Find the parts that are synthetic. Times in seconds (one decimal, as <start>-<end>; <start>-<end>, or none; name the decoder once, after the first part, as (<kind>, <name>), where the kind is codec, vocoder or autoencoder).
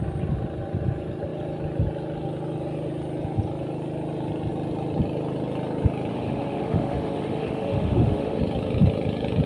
6.1-8.4 (autoencoder, DAC-VAE)